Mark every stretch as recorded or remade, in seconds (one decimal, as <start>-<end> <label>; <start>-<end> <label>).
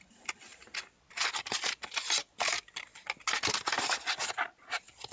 0.0-5.1 recorded